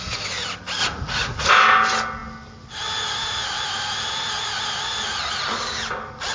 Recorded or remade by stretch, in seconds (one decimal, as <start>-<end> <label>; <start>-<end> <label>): 0.0-0.8 recorded; 0.8-1.5 remade; 1.5-6.3 recorded